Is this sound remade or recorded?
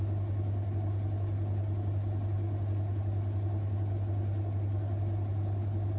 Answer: recorded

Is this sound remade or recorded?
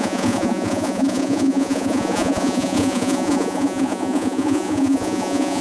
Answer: remade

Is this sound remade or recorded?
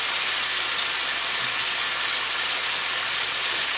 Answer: recorded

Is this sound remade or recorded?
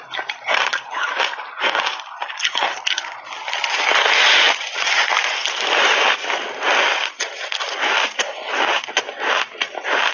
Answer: recorded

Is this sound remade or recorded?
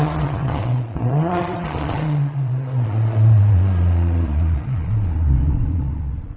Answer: remade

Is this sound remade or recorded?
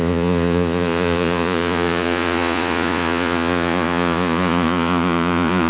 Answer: remade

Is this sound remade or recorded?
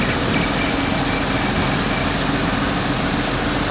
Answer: recorded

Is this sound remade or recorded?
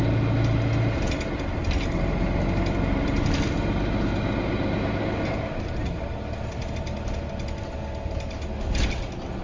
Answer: recorded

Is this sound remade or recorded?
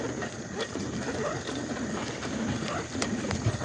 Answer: recorded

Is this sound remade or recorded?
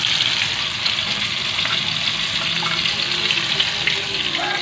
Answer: recorded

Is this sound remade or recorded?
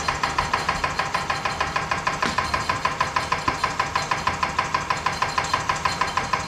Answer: recorded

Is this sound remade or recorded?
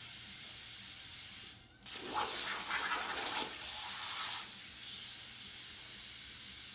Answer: recorded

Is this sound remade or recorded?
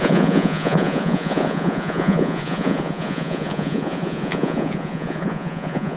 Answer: remade